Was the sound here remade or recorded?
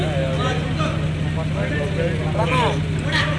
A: recorded